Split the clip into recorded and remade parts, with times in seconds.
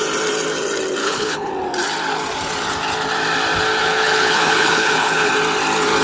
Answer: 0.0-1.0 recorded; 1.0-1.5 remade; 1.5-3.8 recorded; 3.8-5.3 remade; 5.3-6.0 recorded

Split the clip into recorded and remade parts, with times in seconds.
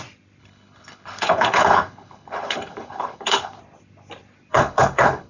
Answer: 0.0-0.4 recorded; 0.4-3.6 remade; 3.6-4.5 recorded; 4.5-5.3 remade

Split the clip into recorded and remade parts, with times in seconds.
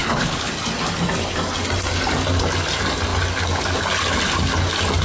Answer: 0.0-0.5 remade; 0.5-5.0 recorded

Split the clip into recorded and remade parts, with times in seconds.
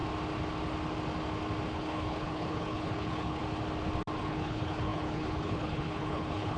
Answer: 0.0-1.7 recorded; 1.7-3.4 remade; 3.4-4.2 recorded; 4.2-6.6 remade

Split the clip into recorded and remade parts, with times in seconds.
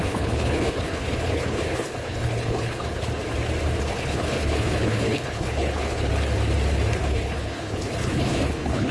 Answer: 0.0-3.2 remade; 3.2-3.8 recorded; 3.8-6.1 remade; 6.1-6.9 recorded; 6.9-8.9 remade